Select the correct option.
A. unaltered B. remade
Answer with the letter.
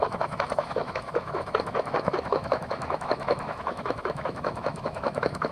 B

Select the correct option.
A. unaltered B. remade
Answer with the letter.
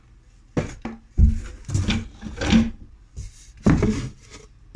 A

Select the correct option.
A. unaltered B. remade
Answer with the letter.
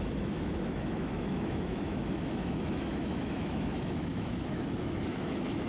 B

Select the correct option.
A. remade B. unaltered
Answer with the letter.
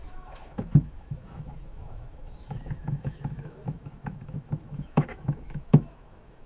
A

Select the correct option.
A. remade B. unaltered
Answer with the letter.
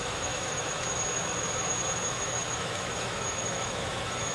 A